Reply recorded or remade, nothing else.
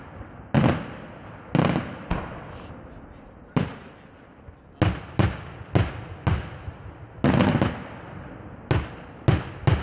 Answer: recorded